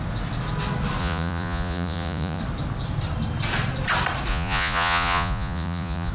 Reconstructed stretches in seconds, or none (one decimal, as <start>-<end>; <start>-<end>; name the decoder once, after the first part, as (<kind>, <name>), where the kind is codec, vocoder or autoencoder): 1.0-2.4 (vocoder, Vocos); 4.3-6.1